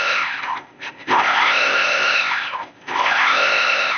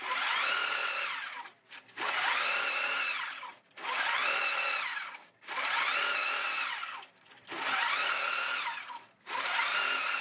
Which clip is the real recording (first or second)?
second